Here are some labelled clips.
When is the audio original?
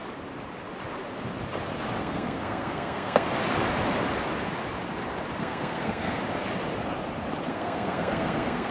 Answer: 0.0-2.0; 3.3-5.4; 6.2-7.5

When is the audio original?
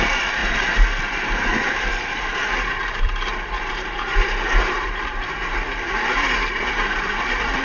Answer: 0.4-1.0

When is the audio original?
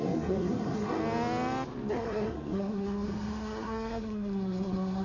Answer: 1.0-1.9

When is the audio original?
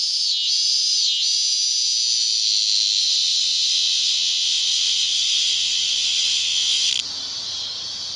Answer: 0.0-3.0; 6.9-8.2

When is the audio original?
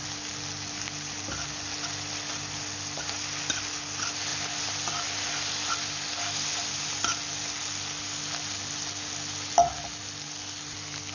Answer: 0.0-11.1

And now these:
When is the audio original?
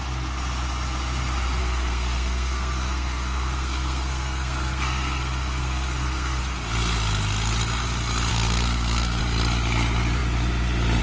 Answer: 0.0-1.6; 6.4-8.3; 9.2-11.0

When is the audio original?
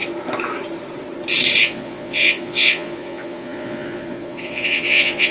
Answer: 0.0-1.6